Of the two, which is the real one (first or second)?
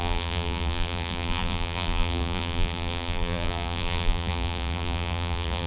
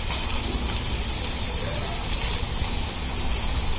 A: second